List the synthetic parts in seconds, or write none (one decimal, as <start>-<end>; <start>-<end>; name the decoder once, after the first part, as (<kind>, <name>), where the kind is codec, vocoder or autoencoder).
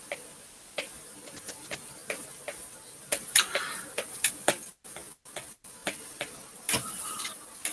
0.0-2.0 (vocoder, BigVGAN v2); 4.1-7.7